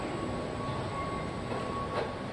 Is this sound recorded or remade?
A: recorded